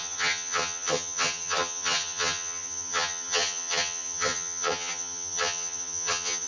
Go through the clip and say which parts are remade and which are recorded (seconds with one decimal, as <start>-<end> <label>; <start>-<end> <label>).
0.0-6.5 remade